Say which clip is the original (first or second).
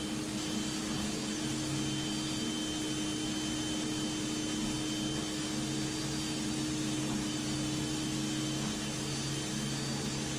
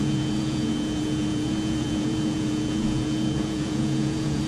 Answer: first